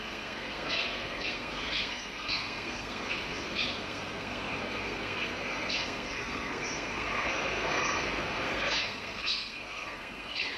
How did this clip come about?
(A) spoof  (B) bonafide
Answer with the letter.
A